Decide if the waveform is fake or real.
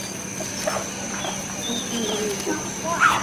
real